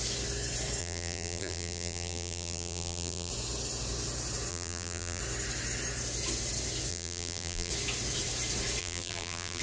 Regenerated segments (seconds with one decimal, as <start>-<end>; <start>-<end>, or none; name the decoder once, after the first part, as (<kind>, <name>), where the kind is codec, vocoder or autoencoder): 0.8-3.3 (vocoder, BigVGAN v2); 4.5-5.2; 6.9-7.7; 8.8-9.6